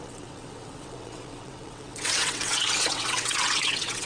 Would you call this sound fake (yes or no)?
yes